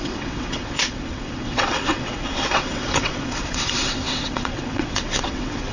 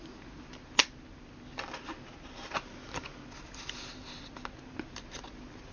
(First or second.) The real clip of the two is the second